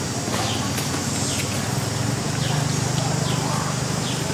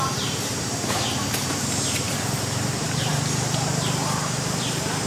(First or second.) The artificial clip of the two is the second